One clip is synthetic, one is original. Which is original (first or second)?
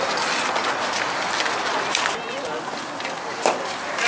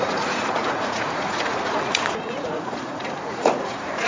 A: first